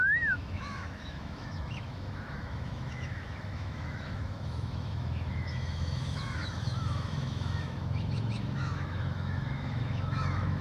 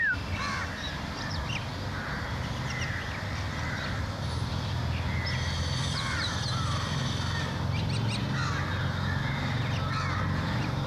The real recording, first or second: second